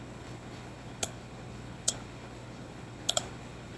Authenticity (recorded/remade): remade